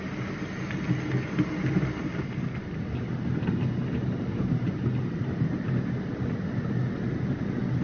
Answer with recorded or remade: recorded